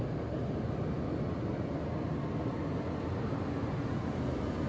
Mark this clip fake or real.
real